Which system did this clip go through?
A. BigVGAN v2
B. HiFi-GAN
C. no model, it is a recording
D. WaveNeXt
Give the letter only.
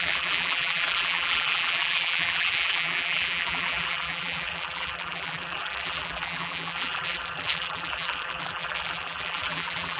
A